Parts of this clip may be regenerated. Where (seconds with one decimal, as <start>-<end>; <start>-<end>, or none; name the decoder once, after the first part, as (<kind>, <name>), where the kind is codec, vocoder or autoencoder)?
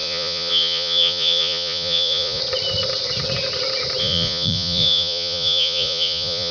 0.0-2.4 (vocoder, Vocos); 4.0-6.5